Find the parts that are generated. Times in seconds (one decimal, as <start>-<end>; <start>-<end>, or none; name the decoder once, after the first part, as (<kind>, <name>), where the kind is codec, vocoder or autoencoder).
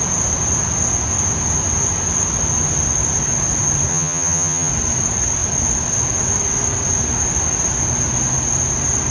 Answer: 3.9-4.7 (vocoder, HiFi-GAN)